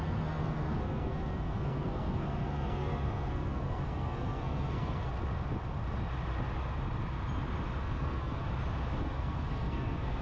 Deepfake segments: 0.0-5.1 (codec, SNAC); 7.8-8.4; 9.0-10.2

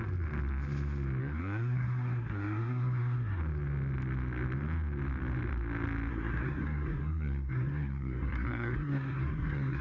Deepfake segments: 1.2-3.4 (codec, SNAC); 6.1-9.8

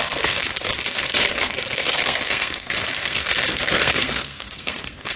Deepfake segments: 0.0-5.2 (codec, SNAC)

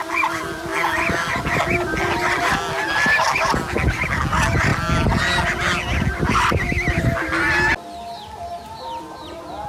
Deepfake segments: none

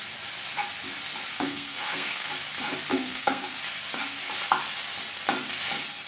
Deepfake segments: 1.3-2.3 (codec, SNAC); 2.9-3.6